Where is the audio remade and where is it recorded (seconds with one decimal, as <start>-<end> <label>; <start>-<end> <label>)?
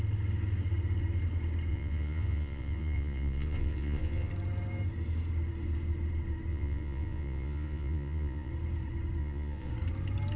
0.0-1.7 recorded; 1.7-4.3 remade; 4.3-6.5 recorded; 6.5-8.5 remade; 8.5-9.2 recorded; 9.2-9.7 remade; 9.7-10.4 recorded